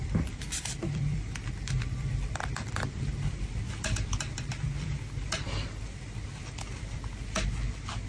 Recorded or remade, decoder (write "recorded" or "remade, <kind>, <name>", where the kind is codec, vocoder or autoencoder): remade, vocoder, BigVGAN v2